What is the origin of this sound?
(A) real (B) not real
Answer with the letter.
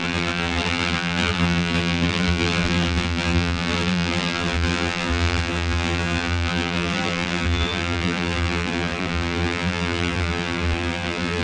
B